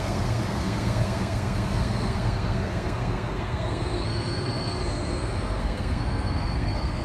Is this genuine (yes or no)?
no